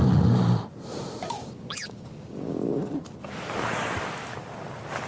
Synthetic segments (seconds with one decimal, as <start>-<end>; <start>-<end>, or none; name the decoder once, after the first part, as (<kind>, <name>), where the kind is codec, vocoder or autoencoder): 1.4-2.9 (codec, DAC)

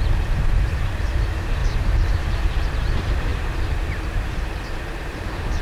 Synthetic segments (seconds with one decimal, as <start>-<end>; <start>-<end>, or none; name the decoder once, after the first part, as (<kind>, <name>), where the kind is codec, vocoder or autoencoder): 0.0-5.6 (vocoder, BigVGAN v2)

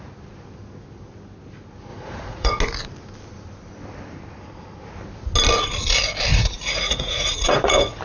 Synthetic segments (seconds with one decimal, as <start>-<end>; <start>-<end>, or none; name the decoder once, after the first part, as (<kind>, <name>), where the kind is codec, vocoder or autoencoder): 1.9-2.6 (vocoder, Vocos); 6.3-8.0

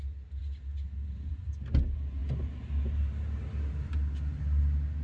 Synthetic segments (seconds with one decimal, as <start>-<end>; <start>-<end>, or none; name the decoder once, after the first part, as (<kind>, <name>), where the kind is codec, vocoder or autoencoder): none